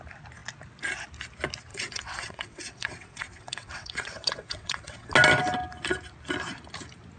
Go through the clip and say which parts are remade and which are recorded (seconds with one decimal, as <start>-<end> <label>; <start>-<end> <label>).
0.0-1.7 recorded; 1.7-5.1 remade; 5.1-7.2 recorded